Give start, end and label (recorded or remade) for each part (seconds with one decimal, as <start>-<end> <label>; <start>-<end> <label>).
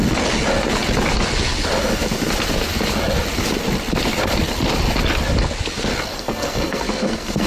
0.0-6.1 recorded; 6.1-7.5 remade